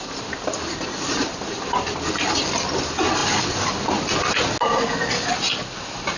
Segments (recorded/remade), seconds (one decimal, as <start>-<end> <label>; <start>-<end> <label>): 0.0-6.2 recorded